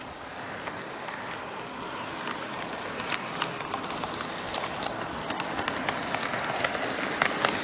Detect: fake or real real